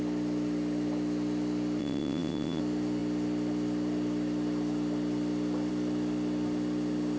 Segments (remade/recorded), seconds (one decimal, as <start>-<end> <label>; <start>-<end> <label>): 0.0-1.8 recorded; 1.8-2.6 remade; 2.6-7.2 recorded